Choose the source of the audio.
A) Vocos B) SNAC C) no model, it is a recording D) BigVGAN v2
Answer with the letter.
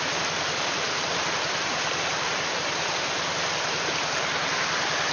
C